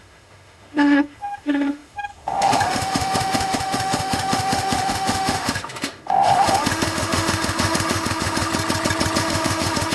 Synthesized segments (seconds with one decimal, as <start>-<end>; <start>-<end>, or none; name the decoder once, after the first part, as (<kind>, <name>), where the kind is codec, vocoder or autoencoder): 0.0-8.5 (autoencoder, DAC-VAE); 9.2-9.9